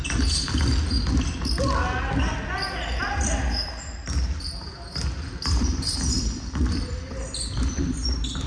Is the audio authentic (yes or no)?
yes